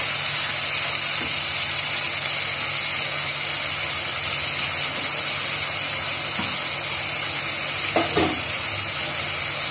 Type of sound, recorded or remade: recorded